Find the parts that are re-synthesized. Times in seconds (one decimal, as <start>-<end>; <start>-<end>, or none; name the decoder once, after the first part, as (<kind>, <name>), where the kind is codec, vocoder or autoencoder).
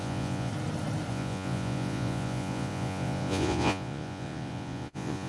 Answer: 0.0-0.5 (vocoder, Vocos); 1.1-5.3